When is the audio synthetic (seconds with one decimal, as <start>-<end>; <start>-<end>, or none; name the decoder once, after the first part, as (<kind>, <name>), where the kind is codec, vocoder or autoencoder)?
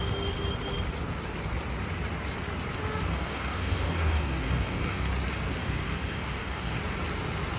3.1-5.1 (codec, DAC); 5.6-6.8